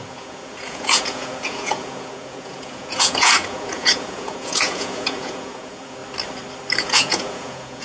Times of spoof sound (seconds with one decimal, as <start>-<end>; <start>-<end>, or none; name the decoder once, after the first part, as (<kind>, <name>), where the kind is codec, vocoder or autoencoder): 0.0-6.0 (vocoder, Vocos); 6.8-7.8